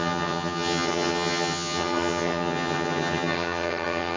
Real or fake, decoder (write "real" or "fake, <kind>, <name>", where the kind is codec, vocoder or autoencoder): fake, vocoder, HiFi-GAN